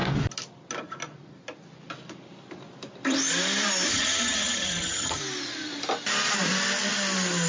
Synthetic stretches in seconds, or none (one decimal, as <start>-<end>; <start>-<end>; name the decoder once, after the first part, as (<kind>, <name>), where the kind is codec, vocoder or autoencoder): 3.9-5.2 (vocoder, HiFi-GAN)